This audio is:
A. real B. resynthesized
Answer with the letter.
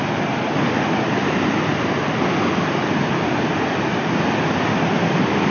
A